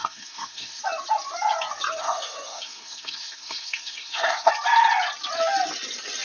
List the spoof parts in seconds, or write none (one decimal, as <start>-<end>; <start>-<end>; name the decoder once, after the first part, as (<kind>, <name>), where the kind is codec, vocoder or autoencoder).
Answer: 0.0-0.8 (codec, SNAC); 2.0-4.5